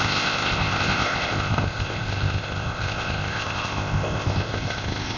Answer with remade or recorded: remade